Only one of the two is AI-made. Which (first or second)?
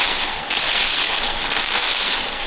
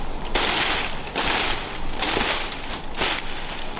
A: first